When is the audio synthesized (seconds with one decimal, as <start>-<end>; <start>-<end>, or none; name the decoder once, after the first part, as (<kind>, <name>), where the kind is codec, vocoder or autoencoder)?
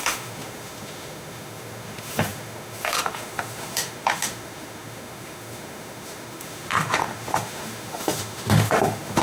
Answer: 0.0-9.2 (autoencoder, DAC-VAE)